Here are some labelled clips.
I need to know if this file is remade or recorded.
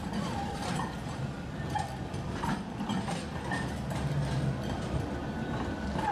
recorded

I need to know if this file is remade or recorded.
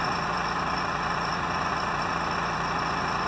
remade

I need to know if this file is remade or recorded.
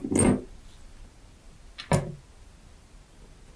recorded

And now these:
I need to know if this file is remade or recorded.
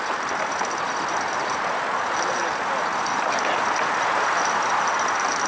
recorded